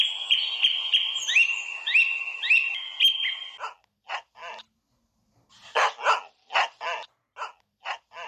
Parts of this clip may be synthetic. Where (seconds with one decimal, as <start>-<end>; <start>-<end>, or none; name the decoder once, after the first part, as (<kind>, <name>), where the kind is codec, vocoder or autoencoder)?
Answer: none